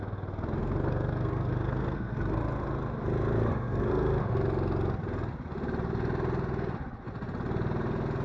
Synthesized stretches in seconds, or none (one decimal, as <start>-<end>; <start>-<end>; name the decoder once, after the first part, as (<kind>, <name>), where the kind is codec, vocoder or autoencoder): 0.6-2.4 (codec, SNAC); 3.5-4.2